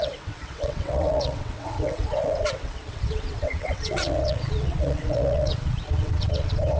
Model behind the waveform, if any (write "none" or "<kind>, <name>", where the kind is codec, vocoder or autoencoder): vocoder, WaveNeXt